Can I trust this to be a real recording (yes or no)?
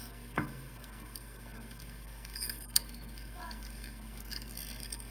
no